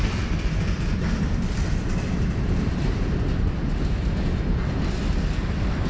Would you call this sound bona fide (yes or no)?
yes